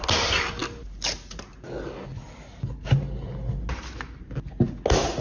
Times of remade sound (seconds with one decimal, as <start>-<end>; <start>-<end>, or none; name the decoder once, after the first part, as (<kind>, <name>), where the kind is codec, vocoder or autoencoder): none